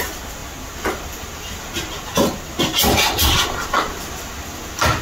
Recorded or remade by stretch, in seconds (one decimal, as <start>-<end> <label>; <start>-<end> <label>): 0.0-5.0 recorded